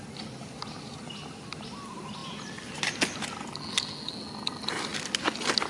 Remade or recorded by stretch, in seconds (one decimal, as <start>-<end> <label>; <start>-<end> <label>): 0.0-5.7 recorded

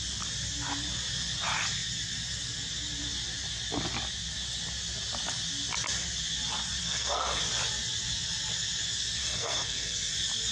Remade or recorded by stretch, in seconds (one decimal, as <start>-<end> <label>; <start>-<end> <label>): 0.0-6.8 recorded; 6.8-7.4 remade; 7.4-9.2 recorded; 9.2-10.1 remade; 10.1-10.5 recorded

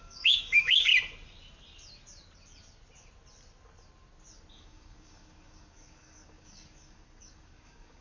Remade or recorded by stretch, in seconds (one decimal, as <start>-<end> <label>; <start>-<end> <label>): 0.0-0.9 remade; 0.9-4.5 recorded; 4.5-8.0 remade

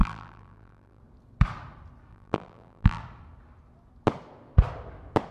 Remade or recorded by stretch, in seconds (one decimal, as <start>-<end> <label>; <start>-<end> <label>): 0.0-1.0 remade; 1.0-2.1 recorded; 2.1-3.0 remade; 3.0-5.3 recorded